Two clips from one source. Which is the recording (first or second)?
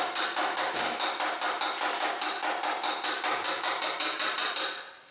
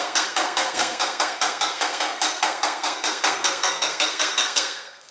first